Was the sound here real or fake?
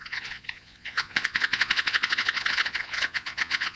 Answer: fake